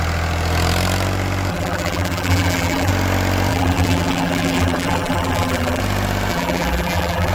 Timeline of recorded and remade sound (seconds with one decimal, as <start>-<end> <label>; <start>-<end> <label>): 0.0-1.5 recorded; 1.5-2.9 remade; 2.9-3.5 recorded; 3.5-5.8 remade; 5.8-6.3 recorded; 6.3-7.3 remade